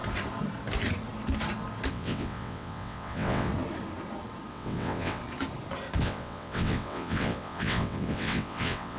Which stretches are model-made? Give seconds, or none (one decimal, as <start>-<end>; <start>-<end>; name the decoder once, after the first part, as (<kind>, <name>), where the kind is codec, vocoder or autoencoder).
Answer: 1.9-3.5 (vocoder, WaveNeXt); 4.5-5.2; 6.0-9.0